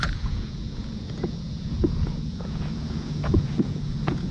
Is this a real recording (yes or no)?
no